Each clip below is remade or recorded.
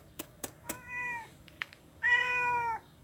remade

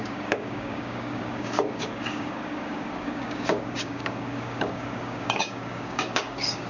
remade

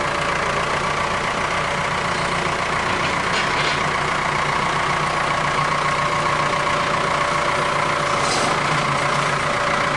recorded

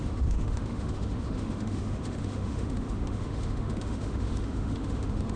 remade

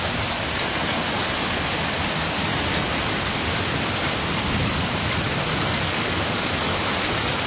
recorded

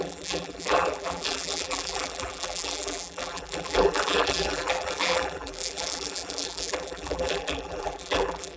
remade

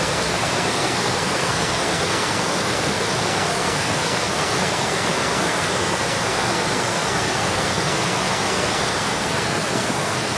remade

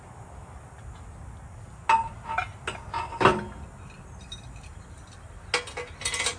recorded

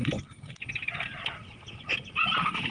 recorded